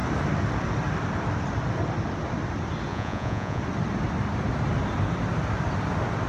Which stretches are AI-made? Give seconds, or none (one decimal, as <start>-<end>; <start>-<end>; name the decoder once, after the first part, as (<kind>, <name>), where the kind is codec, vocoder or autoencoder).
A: 2.9-3.6 (vocoder, Vocos)